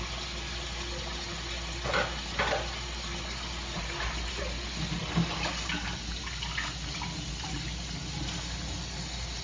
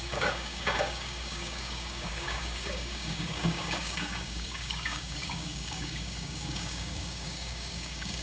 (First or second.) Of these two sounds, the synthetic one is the second